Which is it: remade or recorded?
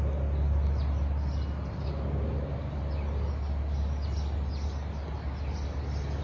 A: recorded